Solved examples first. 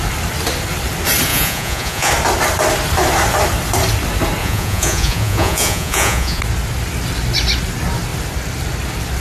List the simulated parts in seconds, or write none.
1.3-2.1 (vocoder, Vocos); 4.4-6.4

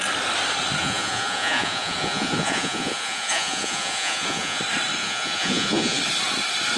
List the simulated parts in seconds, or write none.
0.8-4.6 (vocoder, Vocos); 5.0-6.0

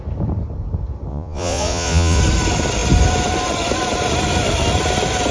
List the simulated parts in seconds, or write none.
1.1-2.2 (vocoder, Vocos)

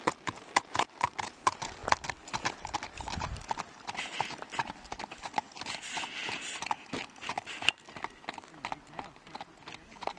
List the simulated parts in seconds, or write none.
none